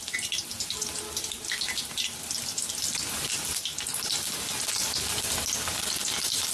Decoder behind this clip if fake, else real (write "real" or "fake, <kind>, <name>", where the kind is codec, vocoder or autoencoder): real